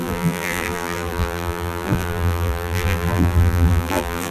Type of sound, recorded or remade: remade